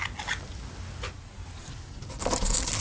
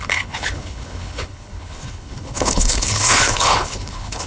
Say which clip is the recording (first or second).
first